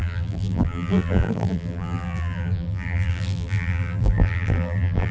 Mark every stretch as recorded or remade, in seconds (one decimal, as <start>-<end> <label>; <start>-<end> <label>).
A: 0.0-5.1 remade